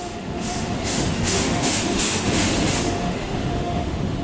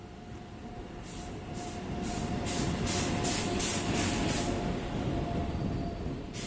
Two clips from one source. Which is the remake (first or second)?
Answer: first